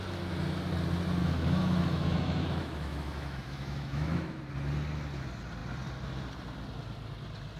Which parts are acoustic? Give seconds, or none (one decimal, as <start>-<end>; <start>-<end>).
0.0-1.2; 4.4-7.6